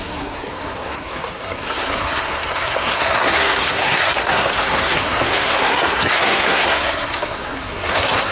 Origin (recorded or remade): remade